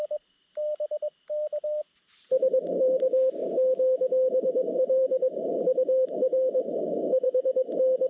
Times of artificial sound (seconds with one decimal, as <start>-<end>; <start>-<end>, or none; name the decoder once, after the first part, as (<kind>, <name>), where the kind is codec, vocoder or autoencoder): 0.0-3.4 (vocoder, BigVGAN v2); 4.3-8.1